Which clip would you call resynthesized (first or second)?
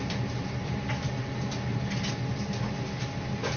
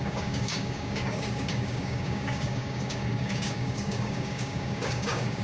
second